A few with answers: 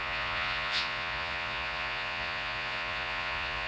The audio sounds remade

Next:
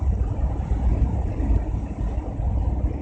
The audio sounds recorded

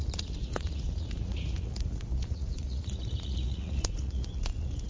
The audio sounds remade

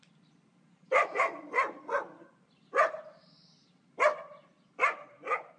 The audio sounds recorded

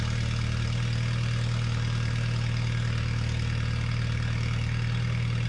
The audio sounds recorded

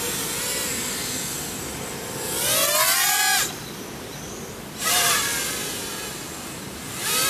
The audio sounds recorded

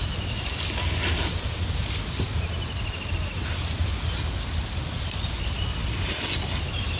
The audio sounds recorded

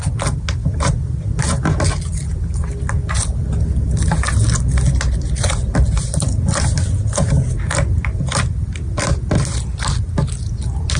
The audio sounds recorded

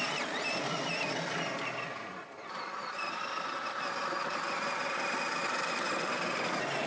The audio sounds recorded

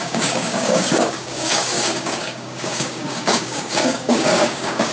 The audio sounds remade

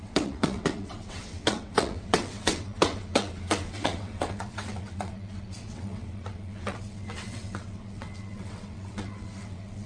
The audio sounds remade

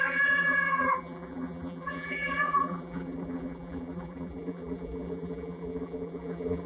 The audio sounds remade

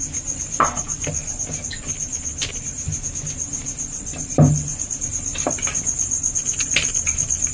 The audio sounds recorded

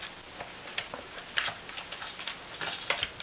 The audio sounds recorded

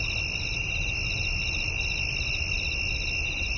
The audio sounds recorded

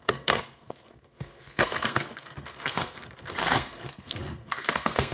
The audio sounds remade